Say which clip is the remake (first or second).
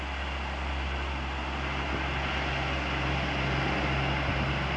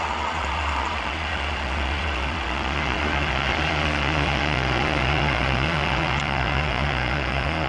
second